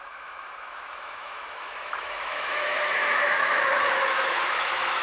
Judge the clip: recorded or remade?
remade